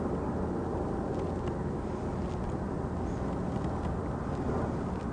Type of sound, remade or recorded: recorded